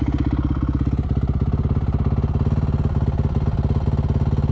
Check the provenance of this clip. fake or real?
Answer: real